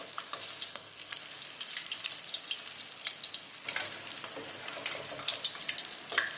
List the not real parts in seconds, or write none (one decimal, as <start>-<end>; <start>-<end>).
0.7-1.2